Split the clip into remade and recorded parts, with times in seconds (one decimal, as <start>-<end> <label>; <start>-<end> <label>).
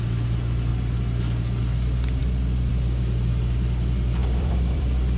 0.0-4.2 recorded; 4.2-5.2 remade